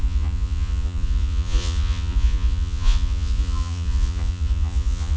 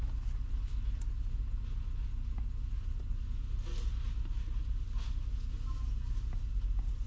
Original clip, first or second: second